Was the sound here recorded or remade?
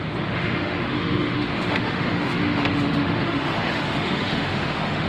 remade